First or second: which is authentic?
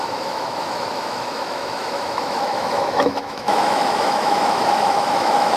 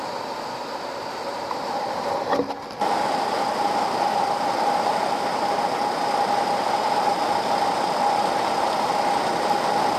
second